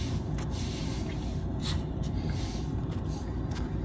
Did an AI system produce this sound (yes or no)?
no